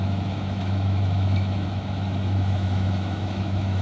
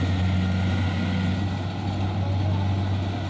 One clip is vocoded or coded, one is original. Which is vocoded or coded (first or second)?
first